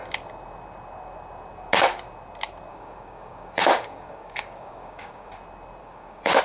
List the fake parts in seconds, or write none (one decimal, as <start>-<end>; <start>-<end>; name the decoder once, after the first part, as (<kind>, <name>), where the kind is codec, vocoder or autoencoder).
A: 2.7-5.3 (codec, DAC); 5.8-6.4